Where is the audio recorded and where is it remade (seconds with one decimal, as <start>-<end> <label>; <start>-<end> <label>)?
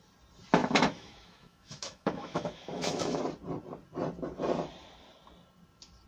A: 0.0-0.6 recorded; 0.6-3.2 remade; 3.2-6.1 recorded